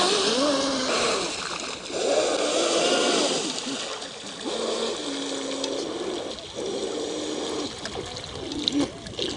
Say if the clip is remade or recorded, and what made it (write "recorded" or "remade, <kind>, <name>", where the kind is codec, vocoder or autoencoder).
recorded